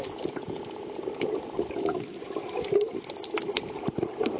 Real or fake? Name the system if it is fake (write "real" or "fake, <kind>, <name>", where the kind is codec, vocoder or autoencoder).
real